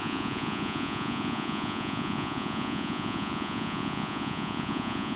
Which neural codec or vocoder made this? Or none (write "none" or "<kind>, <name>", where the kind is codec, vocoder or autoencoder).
vocoder, Vocos